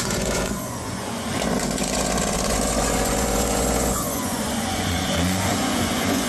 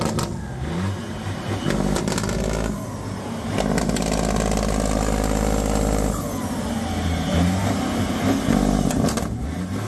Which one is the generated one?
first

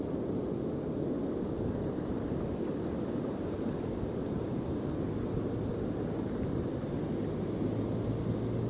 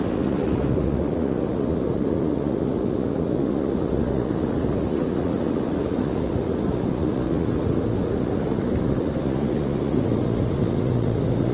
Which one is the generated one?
second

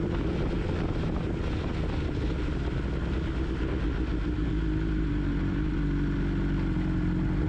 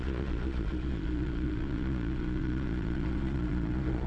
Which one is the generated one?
second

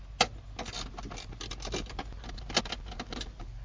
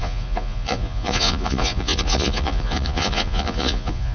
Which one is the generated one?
second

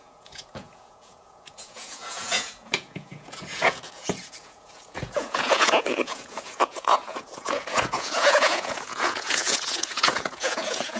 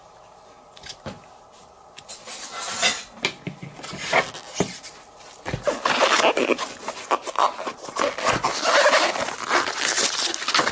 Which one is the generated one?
first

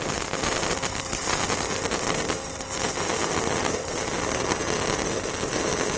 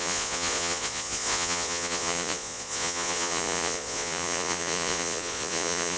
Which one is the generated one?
second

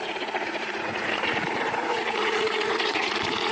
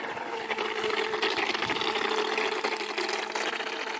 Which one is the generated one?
first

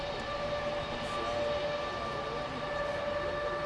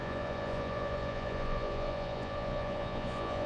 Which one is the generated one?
second